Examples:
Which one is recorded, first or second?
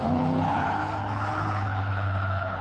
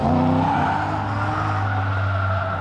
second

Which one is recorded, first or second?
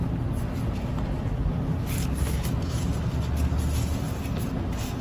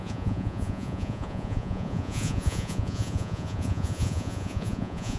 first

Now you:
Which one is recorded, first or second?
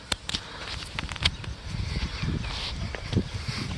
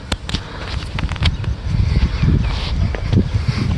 second